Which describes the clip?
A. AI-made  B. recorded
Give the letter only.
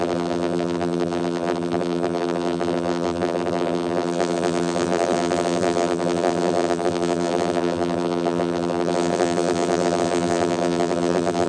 A